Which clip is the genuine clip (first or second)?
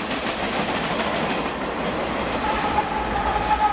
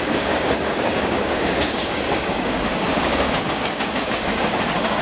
first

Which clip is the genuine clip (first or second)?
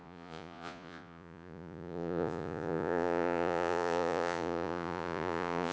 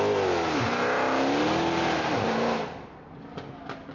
second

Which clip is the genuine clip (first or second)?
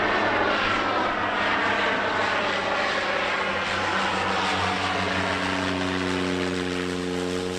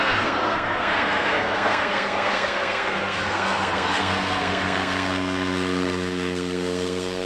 first